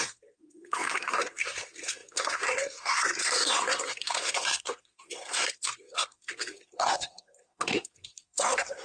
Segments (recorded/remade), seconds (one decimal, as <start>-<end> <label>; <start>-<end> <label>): 0.0-8.8 remade